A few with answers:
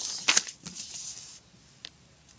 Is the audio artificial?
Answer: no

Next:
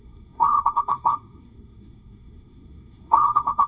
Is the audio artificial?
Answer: yes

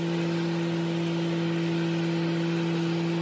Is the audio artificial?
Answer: no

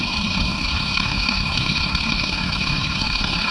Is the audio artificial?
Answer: yes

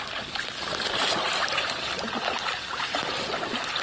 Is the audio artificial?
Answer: no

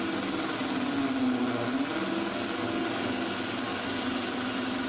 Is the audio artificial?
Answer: no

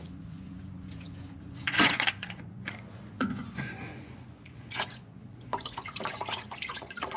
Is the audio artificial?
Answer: yes